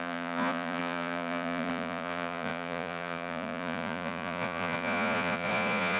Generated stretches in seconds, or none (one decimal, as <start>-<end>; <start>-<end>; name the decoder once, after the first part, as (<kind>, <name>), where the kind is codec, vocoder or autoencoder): 0.0-6.0 (vocoder, Vocos)